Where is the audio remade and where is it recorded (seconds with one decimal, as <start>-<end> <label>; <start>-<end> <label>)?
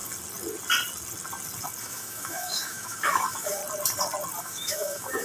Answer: 0.0-1.8 recorded; 1.8-3.6 remade; 3.6-4.4 recorded; 4.4-5.2 remade